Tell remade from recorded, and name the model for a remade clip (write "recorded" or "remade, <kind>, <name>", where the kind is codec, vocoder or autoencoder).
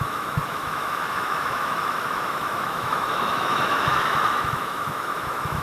remade, autoencoder, DAC-VAE